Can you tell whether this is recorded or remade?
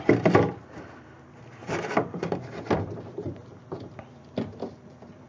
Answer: remade